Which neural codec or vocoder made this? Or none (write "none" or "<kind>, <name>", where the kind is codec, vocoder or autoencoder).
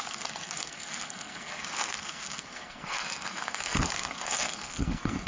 codec, SNAC